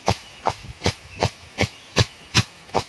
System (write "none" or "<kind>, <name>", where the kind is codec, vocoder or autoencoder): autoencoder, DAC-VAE